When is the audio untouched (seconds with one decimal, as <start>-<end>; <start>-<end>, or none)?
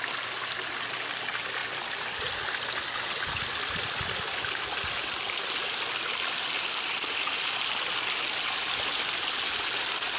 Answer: 0.0-1.6; 4.0-10.2